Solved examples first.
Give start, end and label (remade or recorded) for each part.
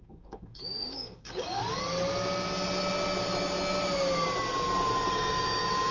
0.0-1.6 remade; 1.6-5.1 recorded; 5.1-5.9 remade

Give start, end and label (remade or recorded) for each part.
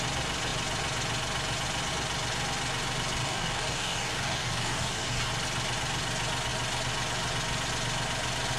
0.0-3.2 recorded; 3.2-5.3 remade; 5.3-8.6 recorded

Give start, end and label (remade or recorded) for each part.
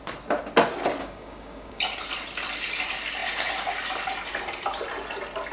0.0-1.0 recorded; 1.0-1.8 remade; 1.8-5.5 recorded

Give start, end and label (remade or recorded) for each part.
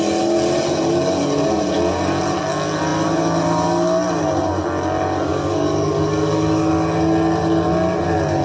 0.0-5.3 recorded; 5.3-6.7 remade; 6.7-8.4 recorded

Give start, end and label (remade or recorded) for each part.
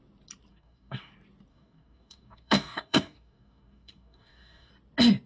0.0-0.5 recorded; 0.5-1.1 remade; 1.1-1.5 recorded; 1.5-4.7 remade; 4.7-5.3 recorded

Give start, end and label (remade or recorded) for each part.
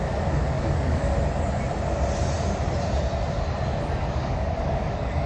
0.0-1.1 remade; 1.1-4.1 recorded; 4.1-5.3 remade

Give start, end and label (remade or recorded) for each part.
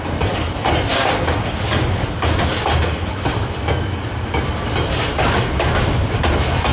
0.0-0.9 recorded; 0.9-2.2 remade; 2.2-6.7 recorded